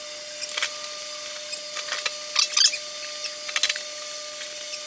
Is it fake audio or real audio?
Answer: real